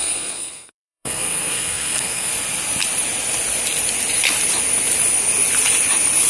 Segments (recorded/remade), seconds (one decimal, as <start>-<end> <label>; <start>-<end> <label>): 0.0-2.3 remade; 2.3-6.3 recorded